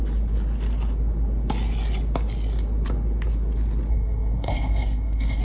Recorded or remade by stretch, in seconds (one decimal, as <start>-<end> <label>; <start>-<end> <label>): 0.0-3.9 recorded; 3.9-5.4 remade